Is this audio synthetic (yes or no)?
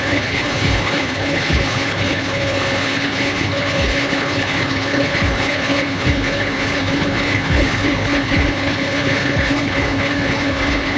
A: yes